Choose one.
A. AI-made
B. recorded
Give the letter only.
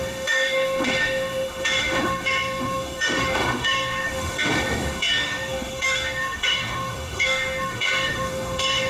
A